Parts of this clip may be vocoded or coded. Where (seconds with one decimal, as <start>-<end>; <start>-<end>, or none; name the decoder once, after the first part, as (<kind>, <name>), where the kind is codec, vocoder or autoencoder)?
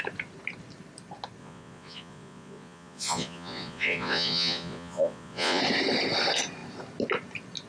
1.4-5.6 (vocoder, Vocos)